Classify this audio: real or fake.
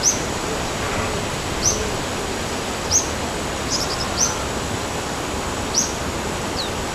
real